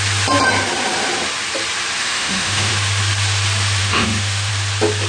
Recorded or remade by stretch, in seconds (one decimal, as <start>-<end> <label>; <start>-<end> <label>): 0.0-2.0 recorded; 2.0-2.7 remade; 2.7-3.8 recorded; 3.8-4.5 remade; 4.5-5.1 recorded